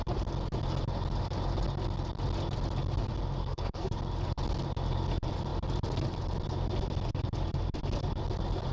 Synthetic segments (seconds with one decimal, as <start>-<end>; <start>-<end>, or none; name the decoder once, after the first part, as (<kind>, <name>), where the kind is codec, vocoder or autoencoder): 3.4-3.9 (codec, SNAC)

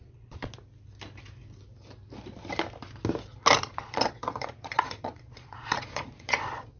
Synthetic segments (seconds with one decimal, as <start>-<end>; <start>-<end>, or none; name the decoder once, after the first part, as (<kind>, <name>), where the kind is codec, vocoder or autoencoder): 0.0-0.5 (vocoder, Vocos); 3.6-6.8

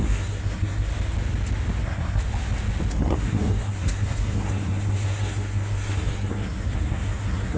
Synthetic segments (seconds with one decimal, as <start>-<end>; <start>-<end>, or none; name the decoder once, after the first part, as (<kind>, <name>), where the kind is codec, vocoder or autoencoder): 0.0-0.9 (codec, SNAC); 1.8-2.2; 2.9-7.6

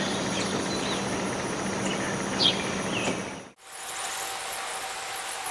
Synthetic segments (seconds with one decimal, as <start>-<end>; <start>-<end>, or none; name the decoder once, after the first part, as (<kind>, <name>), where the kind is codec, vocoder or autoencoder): none

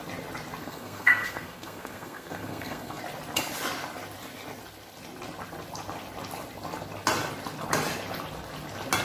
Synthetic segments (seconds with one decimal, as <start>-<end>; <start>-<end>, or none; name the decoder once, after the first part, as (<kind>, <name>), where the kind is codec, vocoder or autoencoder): 0.6-3.0 (codec, SNAC)

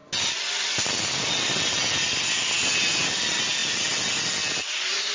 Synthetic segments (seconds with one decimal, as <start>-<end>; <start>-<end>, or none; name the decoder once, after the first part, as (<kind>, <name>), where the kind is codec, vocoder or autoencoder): none

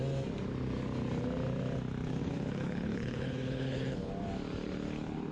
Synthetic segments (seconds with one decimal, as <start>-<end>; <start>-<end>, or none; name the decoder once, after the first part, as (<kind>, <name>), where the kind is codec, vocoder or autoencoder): 2.2-4.1 (codec, HILCodec)

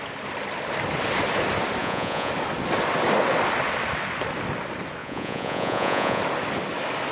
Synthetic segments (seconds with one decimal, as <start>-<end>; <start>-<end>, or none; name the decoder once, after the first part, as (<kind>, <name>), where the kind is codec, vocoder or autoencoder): 1.8-2.3 (vocoder, Vocos); 5.0-6.2